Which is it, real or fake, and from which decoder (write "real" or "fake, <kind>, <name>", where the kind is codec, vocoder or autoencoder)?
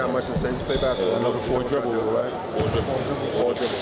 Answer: real